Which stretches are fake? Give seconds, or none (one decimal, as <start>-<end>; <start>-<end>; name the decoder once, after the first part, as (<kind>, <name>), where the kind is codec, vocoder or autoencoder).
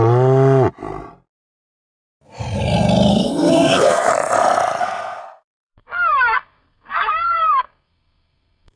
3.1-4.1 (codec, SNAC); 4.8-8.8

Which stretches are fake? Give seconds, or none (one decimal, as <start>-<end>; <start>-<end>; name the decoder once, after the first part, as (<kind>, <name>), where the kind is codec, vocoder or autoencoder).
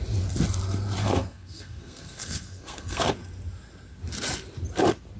1.0-3.1 (codec, SNAC)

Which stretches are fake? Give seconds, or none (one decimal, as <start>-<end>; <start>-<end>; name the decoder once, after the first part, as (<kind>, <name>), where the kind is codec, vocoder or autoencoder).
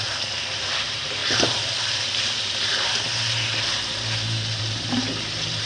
0.0-1.2 (vocoder, BigVGAN v2); 4.6-5.7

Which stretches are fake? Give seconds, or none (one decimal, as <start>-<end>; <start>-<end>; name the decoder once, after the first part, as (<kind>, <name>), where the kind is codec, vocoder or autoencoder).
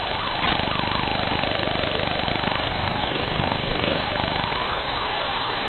2.6-4.1 (codec, DAC); 4.6-5.7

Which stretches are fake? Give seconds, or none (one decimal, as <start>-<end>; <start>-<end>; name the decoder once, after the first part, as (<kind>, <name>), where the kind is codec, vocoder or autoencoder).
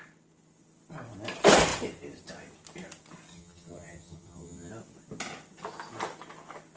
3.3-4.7 (vocoder, HiFi-GAN)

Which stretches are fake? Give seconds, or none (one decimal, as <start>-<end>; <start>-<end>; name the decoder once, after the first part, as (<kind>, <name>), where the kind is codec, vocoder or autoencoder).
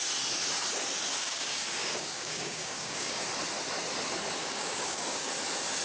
1.2-3.2 (codec, DAC); 4.4-5.3